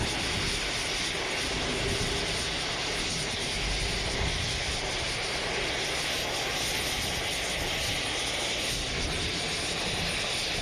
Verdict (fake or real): real